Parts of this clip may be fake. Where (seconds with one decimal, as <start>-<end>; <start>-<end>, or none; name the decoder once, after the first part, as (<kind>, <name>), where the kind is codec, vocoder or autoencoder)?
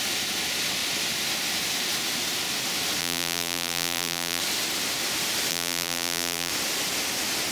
3.0-4.4 (vocoder, BigVGAN v2); 5.5-6.5